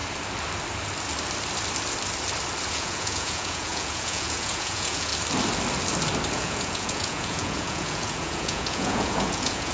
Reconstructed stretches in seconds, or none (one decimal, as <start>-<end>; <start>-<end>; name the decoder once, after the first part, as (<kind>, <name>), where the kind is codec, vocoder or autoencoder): 2.7-5.1 (vocoder, Vocos); 6.3-9.7